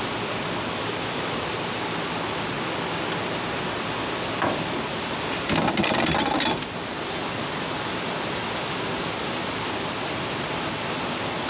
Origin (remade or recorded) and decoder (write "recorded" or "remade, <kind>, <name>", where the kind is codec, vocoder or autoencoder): recorded